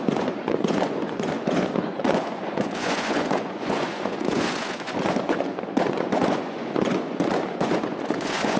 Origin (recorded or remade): remade